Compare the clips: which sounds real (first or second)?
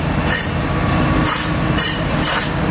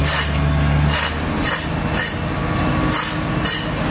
second